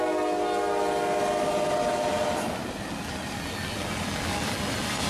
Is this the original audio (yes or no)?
yes